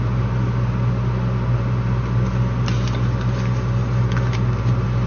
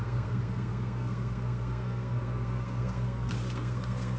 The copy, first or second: second